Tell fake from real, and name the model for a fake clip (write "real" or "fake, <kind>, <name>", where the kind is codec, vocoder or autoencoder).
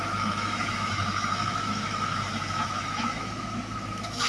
fake, autoencoder, DAC-VAE